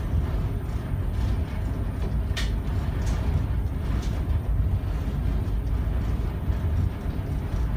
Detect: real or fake real